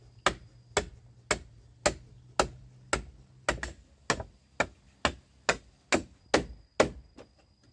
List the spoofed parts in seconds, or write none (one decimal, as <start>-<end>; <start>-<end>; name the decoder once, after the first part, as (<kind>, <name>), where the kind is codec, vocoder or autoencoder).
none